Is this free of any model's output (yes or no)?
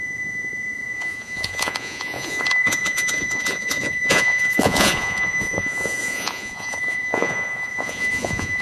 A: no